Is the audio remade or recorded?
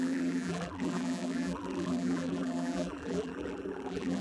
remade